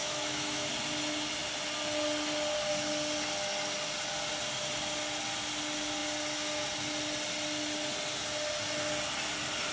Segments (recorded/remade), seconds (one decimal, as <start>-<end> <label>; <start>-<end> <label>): 0.0-0.7 remade; 0.7-9.7 recorded